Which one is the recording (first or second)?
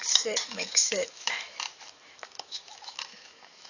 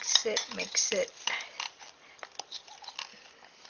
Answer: second